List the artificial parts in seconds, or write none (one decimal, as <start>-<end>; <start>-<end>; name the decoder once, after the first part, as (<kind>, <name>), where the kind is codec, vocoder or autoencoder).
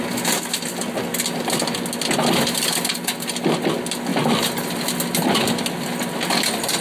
none